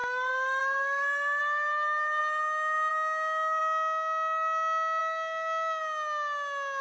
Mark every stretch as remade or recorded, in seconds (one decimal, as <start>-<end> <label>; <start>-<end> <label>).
0.0-1.4 remade; 1.4-6.8 recorded